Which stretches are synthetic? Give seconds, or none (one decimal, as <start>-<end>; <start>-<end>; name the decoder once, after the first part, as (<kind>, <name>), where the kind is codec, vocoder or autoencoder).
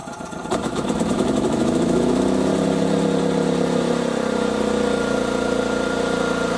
0.6-2.5 (autoencoder, DAC-VAE)